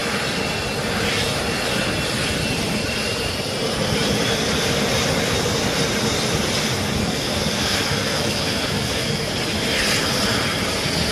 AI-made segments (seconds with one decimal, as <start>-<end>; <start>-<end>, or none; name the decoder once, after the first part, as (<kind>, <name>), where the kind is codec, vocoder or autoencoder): 7.0-9.3 (codec, SNAC)